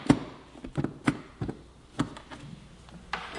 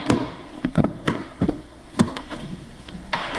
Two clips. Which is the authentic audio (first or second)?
first